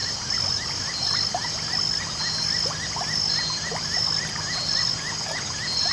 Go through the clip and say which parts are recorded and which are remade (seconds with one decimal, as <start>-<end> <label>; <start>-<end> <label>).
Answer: 0.0-5.9 recorded